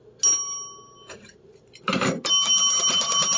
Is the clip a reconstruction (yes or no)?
no